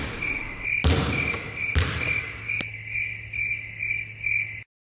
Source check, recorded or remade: recorded